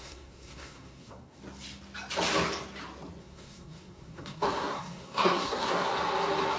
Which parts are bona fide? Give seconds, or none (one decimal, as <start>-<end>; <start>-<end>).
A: 1.4-3.2; 5.9-6.6